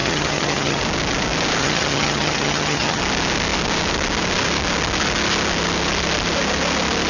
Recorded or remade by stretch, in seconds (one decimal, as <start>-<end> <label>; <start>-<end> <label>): 0.0-0.8 remade; 0.8-1.6 recorded; 1.6-3.0 remade; 3.0-7.1 recorded